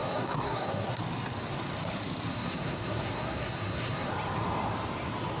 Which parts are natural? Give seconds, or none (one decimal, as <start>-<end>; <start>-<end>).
1.0-2.3; 4.1-5.4